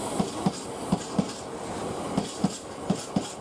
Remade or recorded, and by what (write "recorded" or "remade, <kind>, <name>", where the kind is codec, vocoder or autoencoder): recorded